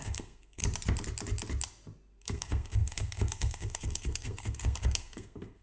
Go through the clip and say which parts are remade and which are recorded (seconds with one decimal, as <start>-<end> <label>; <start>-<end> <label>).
0.0-0.6 remade; 0.6-2.2 recorded; 2.2-5.6 remade